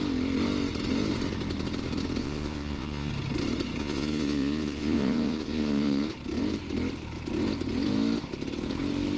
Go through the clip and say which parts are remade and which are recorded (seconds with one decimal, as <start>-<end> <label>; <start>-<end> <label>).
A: 0.0-2.2 recorded; 2.2-3.1 remade; 3.1-3.8 recorded; 3.8-6.1 remade; 6.1-9.2 recorded